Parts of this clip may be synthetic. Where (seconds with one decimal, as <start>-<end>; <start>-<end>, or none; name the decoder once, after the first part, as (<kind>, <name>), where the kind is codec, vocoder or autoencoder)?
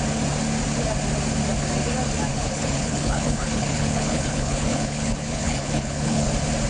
2.3-6.3 (codec, HILCodec)